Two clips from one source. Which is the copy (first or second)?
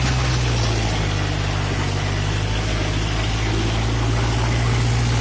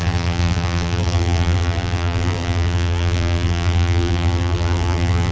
second